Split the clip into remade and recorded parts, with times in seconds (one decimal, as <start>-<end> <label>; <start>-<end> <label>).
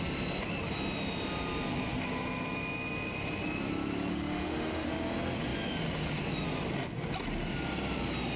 0.0-4.1 recorded; 4.1-4.9 remade; 4.9-8.4 recorded